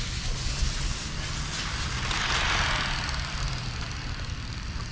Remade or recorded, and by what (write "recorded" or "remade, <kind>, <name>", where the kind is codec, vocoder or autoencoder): recorded